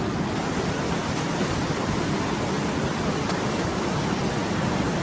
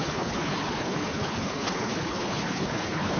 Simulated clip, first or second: second